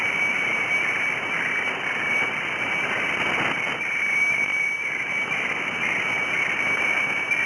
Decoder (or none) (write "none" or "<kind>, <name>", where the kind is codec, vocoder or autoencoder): none